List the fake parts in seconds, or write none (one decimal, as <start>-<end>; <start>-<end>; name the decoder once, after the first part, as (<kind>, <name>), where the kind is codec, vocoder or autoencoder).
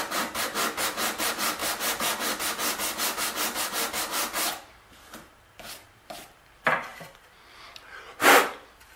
0.0-1.6 (vocoder, BigVGAN v2); 4.0-9.0